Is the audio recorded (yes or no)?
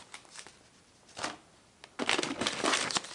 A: yes